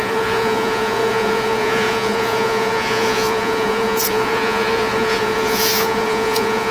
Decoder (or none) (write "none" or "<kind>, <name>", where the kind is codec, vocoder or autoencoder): vocoder, Vocos